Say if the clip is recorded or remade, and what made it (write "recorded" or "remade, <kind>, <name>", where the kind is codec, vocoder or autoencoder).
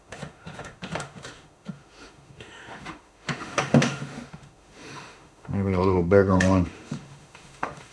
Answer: remade, autoencoder, DAC-VAE